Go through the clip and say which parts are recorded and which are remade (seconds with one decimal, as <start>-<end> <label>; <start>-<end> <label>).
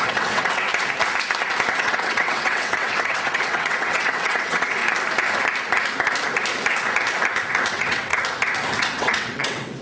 0.0-0.7 remade; 0.7-1.7 recorded; 1.7-4.8 remade; 4.8-7.7 recorded; 7.7-8.1 remade; 8.1-8.8 recorded; 8.8-9.8 remade